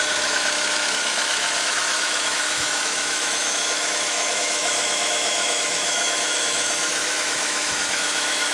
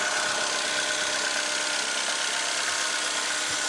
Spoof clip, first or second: first